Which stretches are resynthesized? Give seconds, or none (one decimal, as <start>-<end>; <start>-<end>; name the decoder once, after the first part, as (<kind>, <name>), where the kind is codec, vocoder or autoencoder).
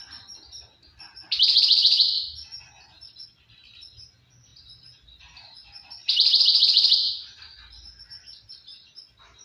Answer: none